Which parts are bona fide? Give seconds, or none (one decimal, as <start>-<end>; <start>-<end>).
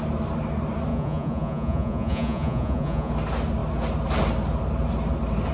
0.0-0.9; 3.1-5.5